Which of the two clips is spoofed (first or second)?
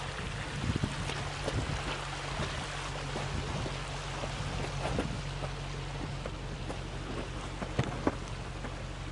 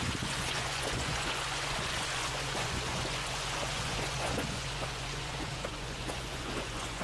second